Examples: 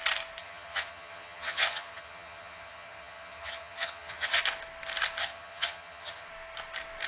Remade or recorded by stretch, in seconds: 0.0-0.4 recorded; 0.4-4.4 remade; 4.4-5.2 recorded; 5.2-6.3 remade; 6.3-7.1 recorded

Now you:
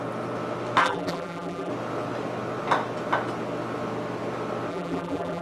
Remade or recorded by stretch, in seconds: 0.0-0.8 recorded; 0.8-1.7 remade; 1.7-4.7 recorded; 4.7-5.4 remade

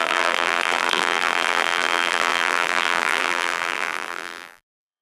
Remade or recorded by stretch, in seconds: 0.0-5.0 remade